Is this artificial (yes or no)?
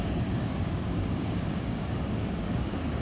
yes